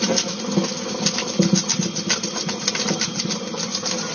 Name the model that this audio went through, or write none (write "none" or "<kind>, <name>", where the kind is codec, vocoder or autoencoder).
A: none